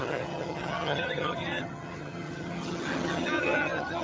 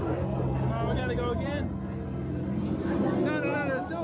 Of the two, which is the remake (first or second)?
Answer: first